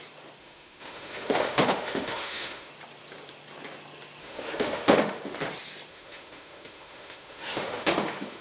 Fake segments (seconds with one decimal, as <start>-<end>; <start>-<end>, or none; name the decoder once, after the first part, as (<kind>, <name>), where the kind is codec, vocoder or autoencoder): 0.4-2.7 (autoencoder, DAC-VAE); 4.2-5.2; 5.9-8.4